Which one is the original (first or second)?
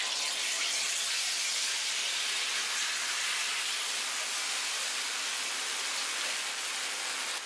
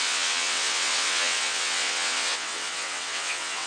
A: first